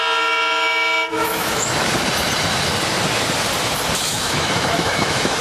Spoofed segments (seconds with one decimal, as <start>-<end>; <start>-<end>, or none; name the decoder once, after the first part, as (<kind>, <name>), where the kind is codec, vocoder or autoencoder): 1.1-1.9 (autoencoder, DAC-VAE); 4.0-5.4